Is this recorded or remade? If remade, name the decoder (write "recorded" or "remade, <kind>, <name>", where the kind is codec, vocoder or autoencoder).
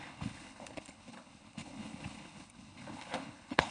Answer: remade, codec, HILCodec